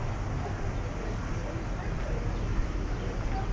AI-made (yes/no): no